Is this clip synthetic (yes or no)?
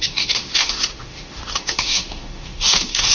yes